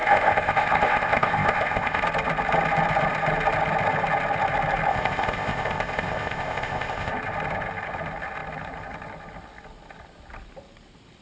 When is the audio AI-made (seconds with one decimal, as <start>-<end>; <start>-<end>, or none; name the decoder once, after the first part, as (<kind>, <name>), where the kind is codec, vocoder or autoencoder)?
0.0-2.0 (codec, ZipCodec); 4.9-7.1